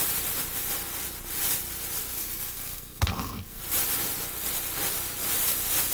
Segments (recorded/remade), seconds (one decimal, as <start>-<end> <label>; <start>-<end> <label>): 0.0-2.2 recorded; 2.2-3.6 remade; 3.6-5.9 recorded